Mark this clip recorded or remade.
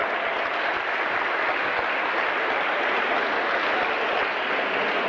recorded